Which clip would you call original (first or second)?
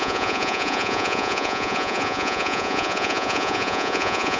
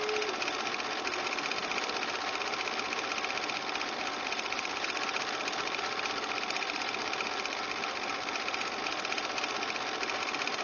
second